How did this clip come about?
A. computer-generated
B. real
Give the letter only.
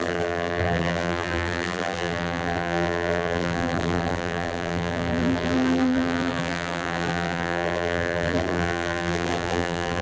A